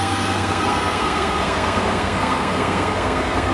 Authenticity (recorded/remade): remade